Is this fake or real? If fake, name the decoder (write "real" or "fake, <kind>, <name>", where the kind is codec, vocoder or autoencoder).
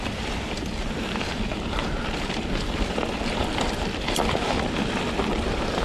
fake, vocoder, BigVGAN v2